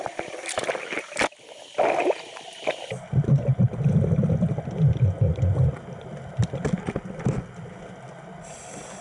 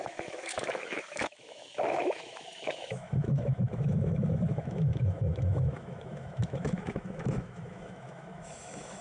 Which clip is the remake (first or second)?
second